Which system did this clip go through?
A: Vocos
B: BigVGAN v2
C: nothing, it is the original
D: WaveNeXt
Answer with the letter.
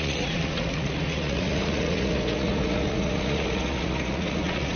A